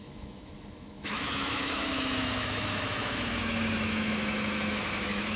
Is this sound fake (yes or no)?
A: yes